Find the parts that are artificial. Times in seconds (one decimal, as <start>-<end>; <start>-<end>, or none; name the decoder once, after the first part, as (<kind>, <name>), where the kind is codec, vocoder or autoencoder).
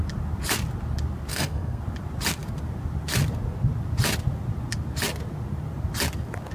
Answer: 1.3-1.8 (codec, SNAC)